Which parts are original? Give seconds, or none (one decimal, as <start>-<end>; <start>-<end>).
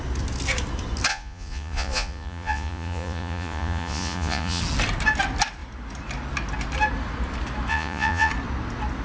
0.0-1.1; 4.6-7.7; 8.3-9.0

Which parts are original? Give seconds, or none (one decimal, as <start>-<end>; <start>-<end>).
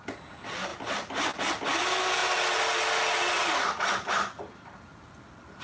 0.0-5.6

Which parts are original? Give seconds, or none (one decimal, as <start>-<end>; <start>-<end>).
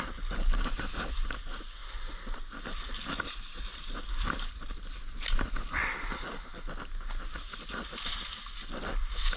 0.0-9.4